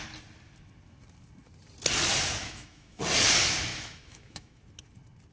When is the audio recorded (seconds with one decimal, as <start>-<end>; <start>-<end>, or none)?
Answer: 0.0-2.4; 3.0-3.7; 4.6-5.3